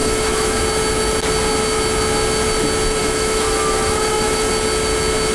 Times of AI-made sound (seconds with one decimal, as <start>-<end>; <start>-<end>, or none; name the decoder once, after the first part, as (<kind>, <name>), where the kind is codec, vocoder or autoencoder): 0.0-0.6 (autoencoder, DAC-VAE); 3.0-4.5